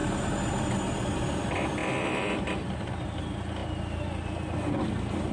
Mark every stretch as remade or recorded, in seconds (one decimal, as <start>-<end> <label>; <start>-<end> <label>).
0.0-5.3 recorded